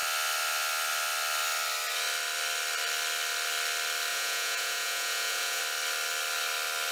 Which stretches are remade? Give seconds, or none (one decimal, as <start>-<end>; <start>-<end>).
4.1-5.6